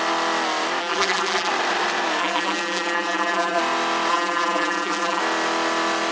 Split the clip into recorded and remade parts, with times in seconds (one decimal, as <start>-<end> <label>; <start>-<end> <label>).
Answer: 0.0-0.8 recorded; 0.8-1.5 remade; 1.5-2.2 recorded; 2.2-3.6 remade; 3.6-4.1 recorded; 4.1-5.2 remade; 5.2-6.1 recorded